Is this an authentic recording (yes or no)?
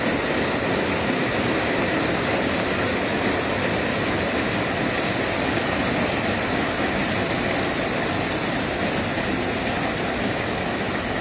yes